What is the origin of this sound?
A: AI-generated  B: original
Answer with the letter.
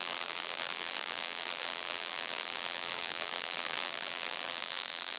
A